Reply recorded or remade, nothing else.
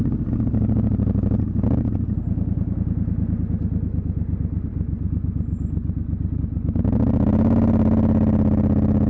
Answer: recorded